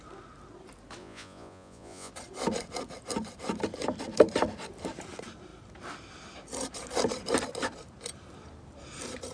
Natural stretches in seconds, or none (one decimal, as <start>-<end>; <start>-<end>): 0.0-1.0; 2.1-9.3